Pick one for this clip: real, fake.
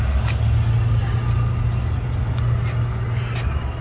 real